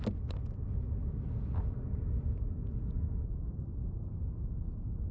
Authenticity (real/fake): real